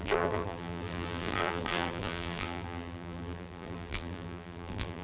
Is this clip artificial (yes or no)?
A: yes